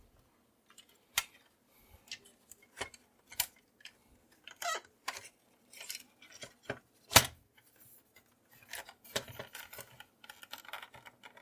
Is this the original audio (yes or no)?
yes